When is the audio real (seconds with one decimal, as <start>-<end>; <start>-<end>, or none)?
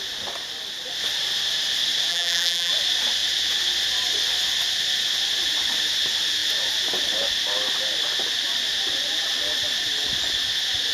0.0-2.1; 2.7-10.9